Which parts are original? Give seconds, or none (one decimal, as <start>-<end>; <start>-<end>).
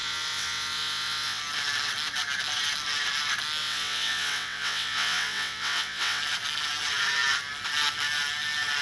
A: 1.4-3.6; 6.2-8.8